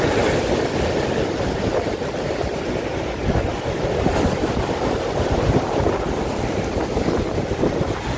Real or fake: real